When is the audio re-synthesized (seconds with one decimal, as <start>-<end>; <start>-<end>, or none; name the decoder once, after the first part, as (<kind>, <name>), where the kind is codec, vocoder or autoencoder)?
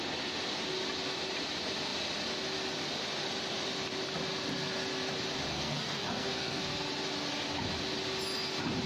5.5-6.9 (codec, SNAC)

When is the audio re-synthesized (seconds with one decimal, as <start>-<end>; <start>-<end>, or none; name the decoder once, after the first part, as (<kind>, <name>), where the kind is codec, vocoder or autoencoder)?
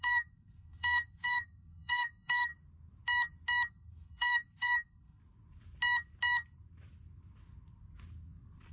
0.0-2.5 (codec, SNAC); 3.7-5.2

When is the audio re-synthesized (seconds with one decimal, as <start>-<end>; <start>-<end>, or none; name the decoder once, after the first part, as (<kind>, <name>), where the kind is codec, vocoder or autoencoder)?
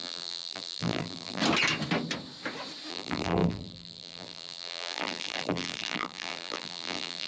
0.0-1.4 (vocoder, BigVGAN v2); 2.9-7.3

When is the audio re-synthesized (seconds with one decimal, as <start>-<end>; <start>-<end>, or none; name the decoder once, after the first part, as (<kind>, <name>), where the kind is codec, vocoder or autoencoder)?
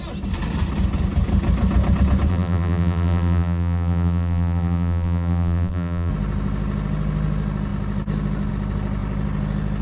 2.3-6.1 (vocoder, BigVGAN v2)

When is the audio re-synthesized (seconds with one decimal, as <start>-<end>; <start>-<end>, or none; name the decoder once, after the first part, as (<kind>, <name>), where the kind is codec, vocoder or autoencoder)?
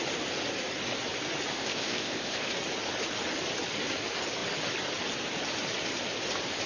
1.5-2.5 (codec, ZipCodec)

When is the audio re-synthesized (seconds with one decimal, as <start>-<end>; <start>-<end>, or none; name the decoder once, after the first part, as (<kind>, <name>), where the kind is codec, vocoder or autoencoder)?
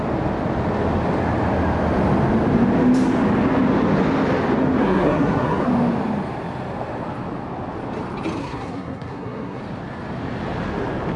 4.8-5.7 (codec, SNAC); 8.4-9.6